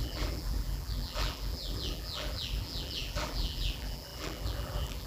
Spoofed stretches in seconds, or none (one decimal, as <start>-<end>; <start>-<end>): 0.0-5.1